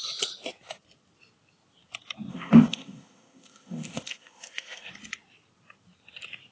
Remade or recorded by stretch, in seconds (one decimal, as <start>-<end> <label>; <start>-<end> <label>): 0.0-2.3 recorded; 2.3-4.9 remade; 4.9-6.5 recorded